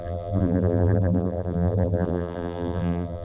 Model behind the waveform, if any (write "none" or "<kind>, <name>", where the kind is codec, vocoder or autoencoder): vocoder, BigVGAN v2